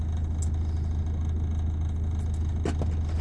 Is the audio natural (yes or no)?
yes